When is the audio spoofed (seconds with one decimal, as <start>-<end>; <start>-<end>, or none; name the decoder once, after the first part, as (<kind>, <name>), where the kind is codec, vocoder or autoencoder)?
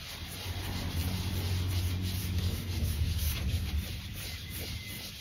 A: 2.2-3.7 (codec, DAC)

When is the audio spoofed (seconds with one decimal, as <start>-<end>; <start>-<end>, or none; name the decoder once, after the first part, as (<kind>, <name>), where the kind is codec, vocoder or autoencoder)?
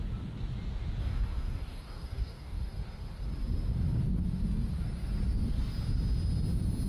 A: 1.0-2.8 (codec, DAC)